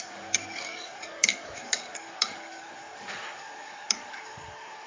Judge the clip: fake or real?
fake